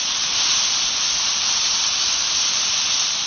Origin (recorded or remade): recorded